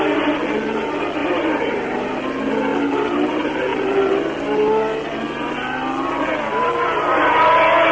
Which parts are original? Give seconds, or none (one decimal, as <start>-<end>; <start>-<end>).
0.0-1.2; 2.2-2.7; 3.3-7.9